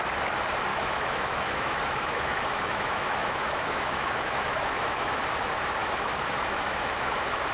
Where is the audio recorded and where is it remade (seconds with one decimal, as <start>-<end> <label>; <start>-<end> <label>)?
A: 0.0-0.7 recorded; 0.7-5.2 remade; 5.2-5.8 recorded; 5.8-7.1 remade; 7.1-7.5 recorded